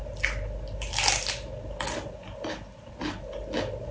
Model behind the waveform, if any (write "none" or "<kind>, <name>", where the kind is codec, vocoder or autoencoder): none